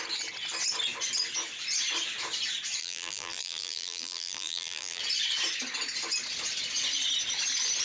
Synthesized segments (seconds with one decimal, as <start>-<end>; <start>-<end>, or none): 2.8-5.0

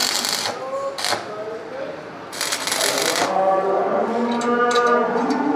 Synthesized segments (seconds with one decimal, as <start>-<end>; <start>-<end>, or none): none

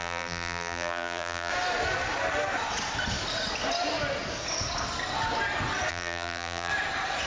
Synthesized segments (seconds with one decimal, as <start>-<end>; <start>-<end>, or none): 0.0-1.5; 5.9-6.7

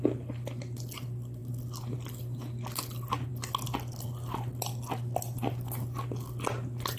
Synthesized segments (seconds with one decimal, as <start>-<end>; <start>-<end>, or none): none